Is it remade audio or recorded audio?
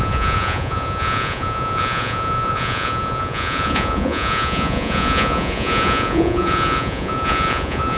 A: remade